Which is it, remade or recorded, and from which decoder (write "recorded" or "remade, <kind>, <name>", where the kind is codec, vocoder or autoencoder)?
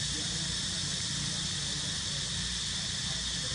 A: recorded